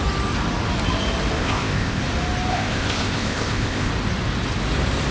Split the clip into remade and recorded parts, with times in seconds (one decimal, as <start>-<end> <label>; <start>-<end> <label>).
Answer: 0.0-1.4 recorded; 1.4-2.0 remade; 2.0-2.5 recorded; 2.5-3.9 remade; 3.9-5.1 recorded